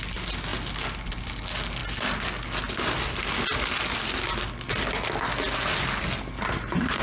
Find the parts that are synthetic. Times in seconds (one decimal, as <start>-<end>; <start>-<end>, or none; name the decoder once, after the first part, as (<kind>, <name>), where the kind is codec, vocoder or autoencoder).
none